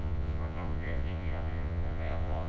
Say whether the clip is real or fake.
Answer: fake